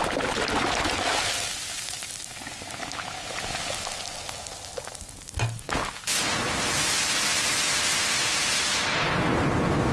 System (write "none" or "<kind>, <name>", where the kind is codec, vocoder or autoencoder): none